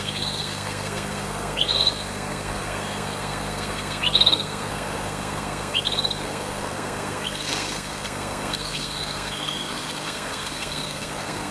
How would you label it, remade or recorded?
remade